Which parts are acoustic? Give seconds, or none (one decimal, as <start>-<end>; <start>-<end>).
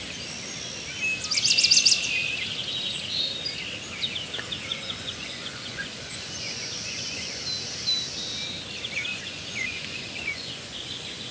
0.0-4.7; 7.4-9.1